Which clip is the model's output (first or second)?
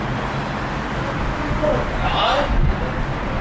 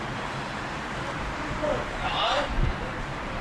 second